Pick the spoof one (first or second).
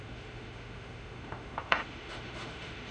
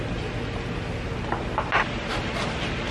first